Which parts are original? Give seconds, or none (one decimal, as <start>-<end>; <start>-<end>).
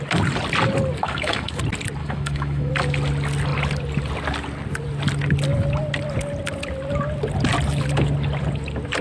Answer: 0.0-1.0; 1.6-2.0; 2.7-9.0